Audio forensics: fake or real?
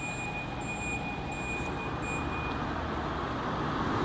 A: real